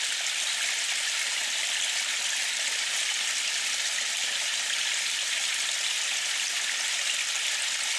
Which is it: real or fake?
real